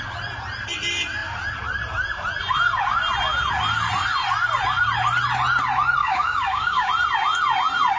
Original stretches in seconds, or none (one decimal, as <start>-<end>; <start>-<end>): 0.0-6.0; 6.9-8.0